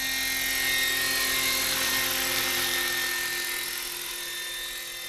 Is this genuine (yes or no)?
yes